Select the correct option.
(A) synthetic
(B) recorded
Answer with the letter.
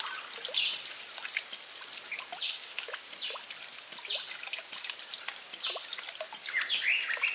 B